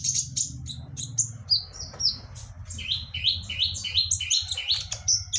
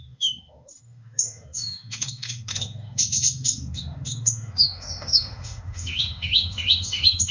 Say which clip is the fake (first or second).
second